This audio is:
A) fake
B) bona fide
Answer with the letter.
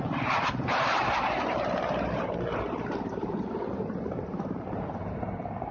A